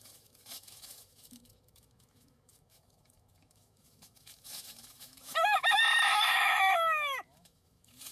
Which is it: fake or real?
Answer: fake